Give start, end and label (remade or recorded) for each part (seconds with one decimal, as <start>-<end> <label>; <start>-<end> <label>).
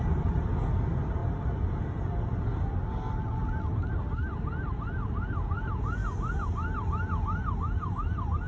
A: 0.0-8.5 recorded